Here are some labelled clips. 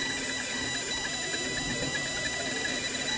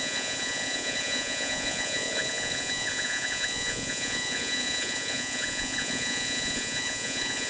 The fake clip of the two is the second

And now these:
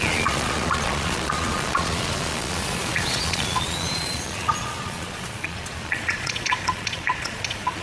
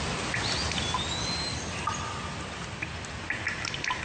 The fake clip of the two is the first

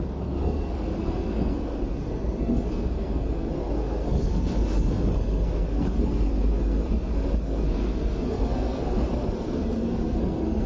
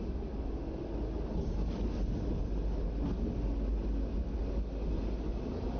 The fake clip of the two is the first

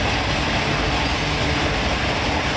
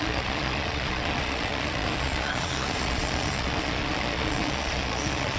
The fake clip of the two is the second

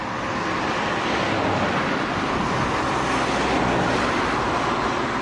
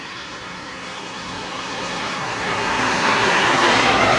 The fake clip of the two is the second